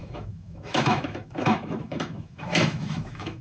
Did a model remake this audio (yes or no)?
yes